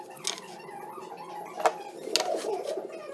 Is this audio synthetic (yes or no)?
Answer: no